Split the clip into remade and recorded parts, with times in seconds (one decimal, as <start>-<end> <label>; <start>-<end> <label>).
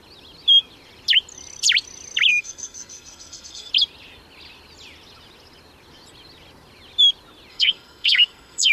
0.0-2.3 recorded; 2.3-3.7 remade; 3.7-7.5 recorded; 7.5-8.7 remade